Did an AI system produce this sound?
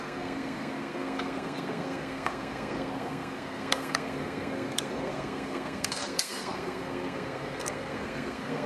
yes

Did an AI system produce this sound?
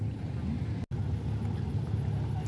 no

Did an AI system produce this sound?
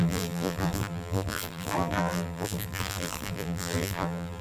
yes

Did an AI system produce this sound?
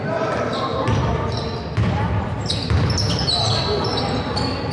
no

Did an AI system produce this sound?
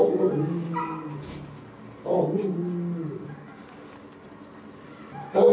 no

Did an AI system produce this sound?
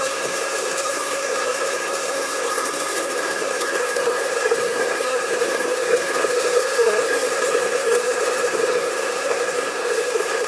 yes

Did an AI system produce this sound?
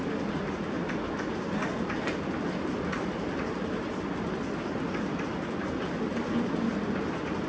no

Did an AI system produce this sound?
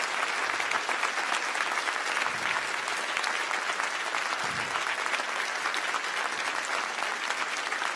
no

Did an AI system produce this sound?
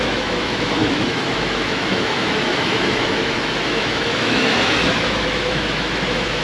yes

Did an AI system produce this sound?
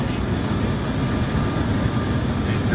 no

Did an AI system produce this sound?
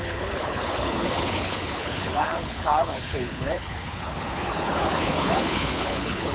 yes